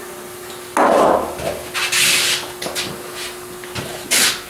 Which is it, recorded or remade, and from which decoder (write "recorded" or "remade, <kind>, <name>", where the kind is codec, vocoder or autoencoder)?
recorded